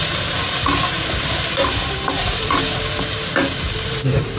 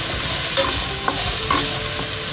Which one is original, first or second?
second